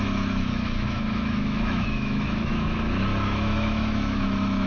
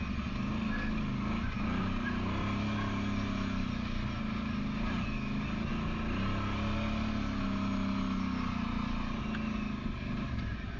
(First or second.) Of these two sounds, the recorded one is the second